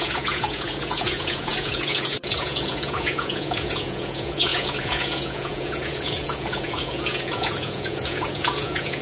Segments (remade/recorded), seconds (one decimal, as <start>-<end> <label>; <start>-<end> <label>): 0.0-9.0 remade